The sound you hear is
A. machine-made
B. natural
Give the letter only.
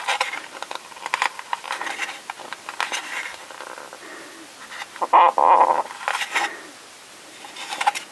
B